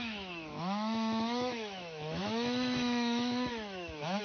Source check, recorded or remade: remade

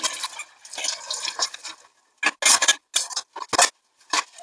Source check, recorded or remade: recorded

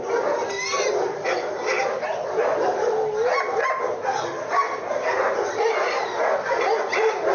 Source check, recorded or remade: recorded